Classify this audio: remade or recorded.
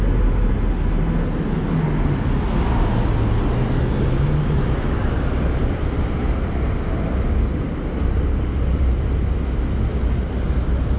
recorded